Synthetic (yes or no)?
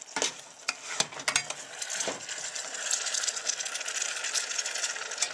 no